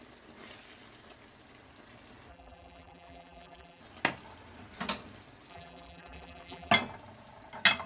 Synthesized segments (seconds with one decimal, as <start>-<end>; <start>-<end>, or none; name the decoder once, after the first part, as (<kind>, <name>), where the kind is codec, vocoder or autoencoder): 2.3-3.8 (vocoder, BigVGAN v2); 5.5-6.7